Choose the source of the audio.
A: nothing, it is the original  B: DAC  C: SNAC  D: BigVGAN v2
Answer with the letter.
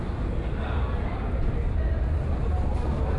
A